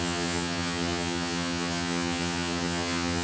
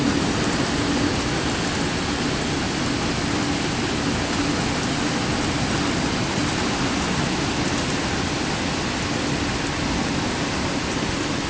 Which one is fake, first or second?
first